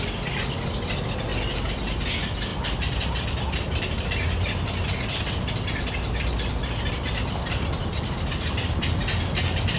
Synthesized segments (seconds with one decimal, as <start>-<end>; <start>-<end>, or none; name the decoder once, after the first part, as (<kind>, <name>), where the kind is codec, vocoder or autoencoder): 2.5-3.1 (vocoder, BigVGAN v2)